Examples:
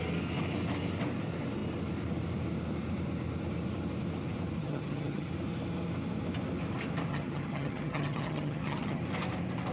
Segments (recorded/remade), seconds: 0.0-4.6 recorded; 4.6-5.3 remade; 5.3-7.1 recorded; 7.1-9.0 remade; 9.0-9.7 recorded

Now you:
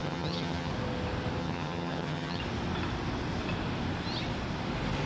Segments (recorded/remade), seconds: 0.0-0.7 remade; 0.7-1.4 recorded; 1.4-2.4 remade; 2.4-5.1 recorded

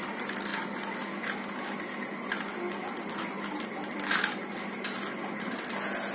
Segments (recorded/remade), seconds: 0.0-6.1 recorded

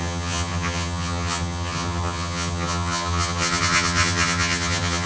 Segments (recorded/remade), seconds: 0.0-5.1 remade